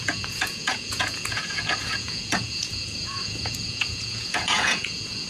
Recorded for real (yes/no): no